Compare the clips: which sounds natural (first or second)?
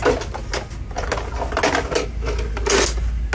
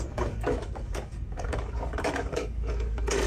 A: first